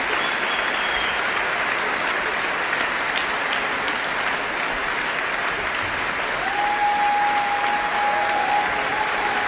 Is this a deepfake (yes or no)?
no